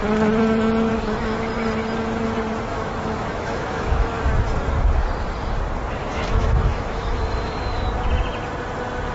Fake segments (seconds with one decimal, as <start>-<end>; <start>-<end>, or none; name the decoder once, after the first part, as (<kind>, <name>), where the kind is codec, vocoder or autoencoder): 0.9-1.5 (autoencoder, DAC-VAE); 2.7-4.3; 6.0-7.9